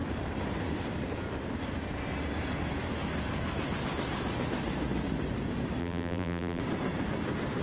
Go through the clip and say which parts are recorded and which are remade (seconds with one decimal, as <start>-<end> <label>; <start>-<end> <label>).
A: 0.0-5.8 recorded; 5.8-6.6 remade; 6.6-7.6 recorded